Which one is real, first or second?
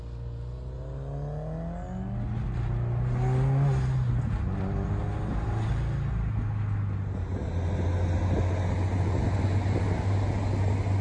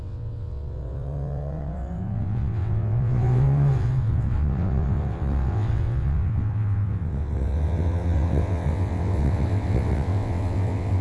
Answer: first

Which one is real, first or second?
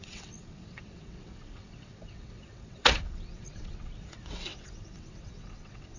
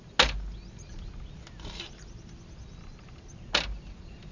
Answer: second